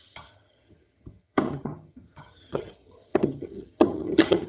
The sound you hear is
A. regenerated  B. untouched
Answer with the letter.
A